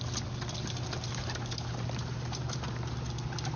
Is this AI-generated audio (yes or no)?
no